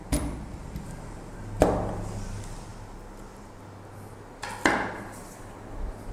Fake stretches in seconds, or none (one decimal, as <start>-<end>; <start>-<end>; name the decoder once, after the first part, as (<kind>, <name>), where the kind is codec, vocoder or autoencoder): 0.0-1.4 (vocoder, BigVGAN v2)